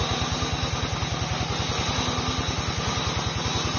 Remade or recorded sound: recorded